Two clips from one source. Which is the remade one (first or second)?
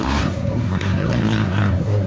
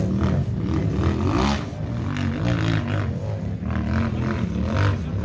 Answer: first